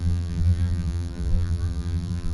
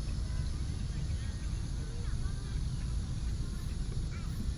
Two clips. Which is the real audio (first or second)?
second